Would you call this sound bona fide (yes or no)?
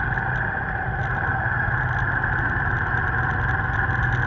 yes